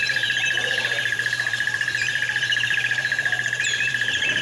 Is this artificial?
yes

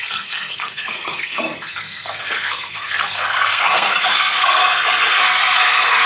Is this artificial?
yes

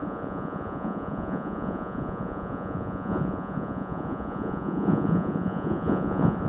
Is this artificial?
yes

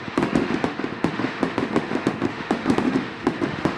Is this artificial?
yes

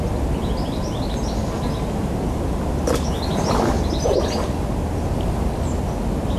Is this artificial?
no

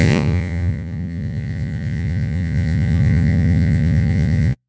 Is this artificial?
yes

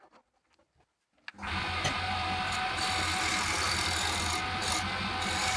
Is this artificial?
no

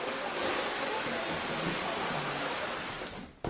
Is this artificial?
no